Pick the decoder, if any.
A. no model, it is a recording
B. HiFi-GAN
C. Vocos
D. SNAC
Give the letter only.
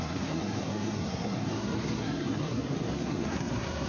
D